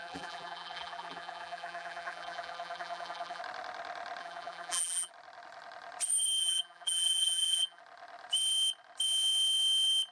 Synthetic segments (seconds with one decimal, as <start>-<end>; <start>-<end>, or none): 0.0-3.4; 4.2-5.1; 6.4-7.8